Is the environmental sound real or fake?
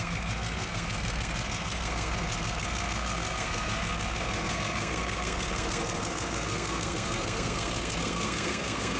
fake